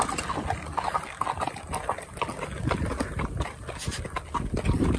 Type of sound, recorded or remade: recorded